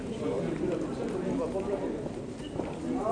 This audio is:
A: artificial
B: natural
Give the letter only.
B